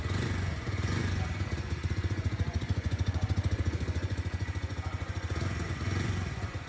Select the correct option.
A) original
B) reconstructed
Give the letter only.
B